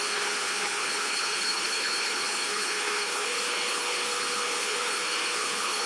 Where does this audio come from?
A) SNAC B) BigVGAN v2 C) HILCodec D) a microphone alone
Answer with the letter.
C